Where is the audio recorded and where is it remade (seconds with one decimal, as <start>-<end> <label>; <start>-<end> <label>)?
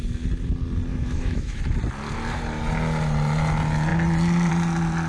0.0-0.9 recorded; 0.9-1.6 remade; 1.6-5.1 recorded